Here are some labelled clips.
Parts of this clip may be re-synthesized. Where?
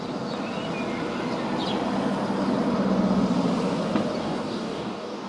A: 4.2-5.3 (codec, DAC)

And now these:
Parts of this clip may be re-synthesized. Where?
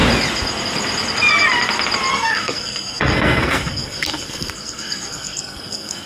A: 2.1-6.1 (codec, SNAC)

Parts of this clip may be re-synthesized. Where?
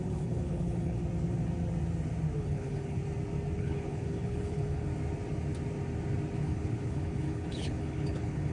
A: 0.0-1.0 (codec, HILCodec); 2.4-3.0; 3.6-4.9; 6.4-8.5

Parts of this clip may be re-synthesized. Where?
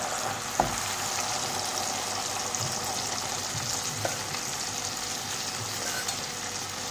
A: none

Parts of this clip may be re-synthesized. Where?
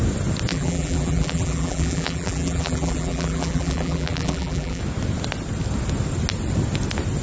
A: 0.5-4.8 (vocoder, BigVGAN v2)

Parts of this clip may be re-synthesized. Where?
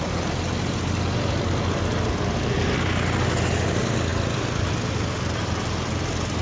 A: none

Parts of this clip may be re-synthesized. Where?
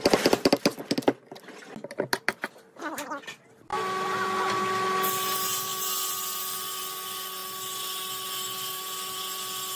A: none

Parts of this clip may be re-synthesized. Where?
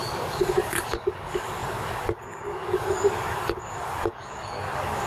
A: 0.0-5.1 (codec, DAC)